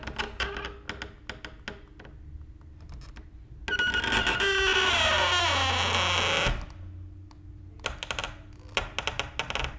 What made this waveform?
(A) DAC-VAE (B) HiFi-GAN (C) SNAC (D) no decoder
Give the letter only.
D